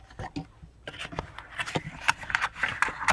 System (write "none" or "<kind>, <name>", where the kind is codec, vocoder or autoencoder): none